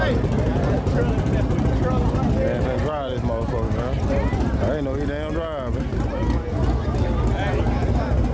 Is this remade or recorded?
recorded